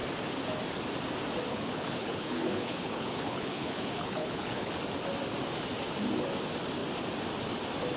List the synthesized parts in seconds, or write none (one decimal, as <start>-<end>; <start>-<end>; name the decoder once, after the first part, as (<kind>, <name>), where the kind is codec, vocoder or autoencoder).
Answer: 1.5-4.7 (codec, HILCodec)